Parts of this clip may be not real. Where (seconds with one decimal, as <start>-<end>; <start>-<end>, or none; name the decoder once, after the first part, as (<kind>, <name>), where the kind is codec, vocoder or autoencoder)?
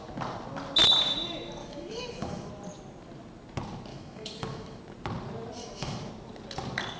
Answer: 1.6-2.5 (autoencoder, DAC-VAE); 3.9-4.8; 5.6-6.1